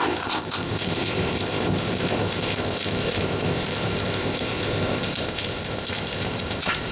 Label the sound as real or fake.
fake